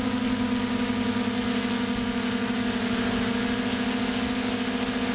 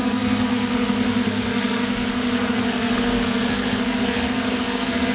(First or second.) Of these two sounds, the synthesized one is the second